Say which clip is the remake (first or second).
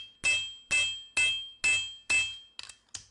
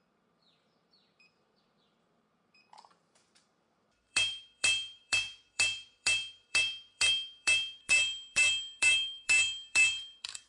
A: second